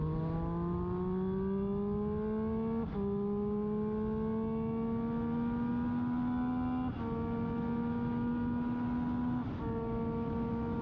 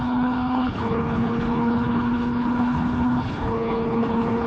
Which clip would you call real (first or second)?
first